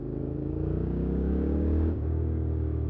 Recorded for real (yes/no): no